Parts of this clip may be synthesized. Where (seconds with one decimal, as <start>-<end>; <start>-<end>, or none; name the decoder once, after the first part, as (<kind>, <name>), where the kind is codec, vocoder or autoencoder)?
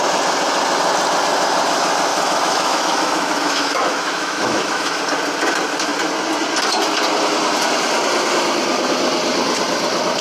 2.1-5.0 (autoencoder, DAC-VAE)